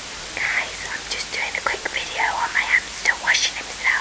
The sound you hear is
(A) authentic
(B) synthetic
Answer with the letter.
A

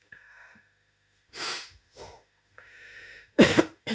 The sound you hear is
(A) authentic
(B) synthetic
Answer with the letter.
B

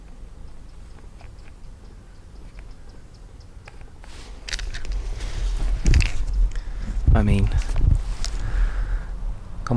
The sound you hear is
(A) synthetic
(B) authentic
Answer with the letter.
B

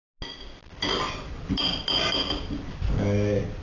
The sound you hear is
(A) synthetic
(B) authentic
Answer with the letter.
B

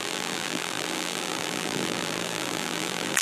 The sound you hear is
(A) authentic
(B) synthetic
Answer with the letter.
B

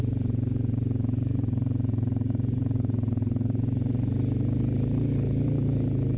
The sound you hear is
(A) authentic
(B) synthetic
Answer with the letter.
A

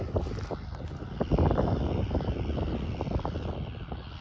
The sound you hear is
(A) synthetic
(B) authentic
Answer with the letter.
B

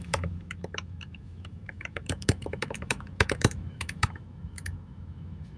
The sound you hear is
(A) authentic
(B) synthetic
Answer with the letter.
B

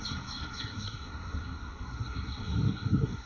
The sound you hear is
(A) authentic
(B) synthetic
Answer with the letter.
B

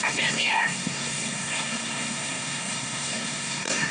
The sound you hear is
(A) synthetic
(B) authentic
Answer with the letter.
A